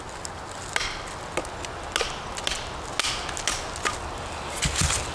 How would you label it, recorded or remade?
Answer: recorded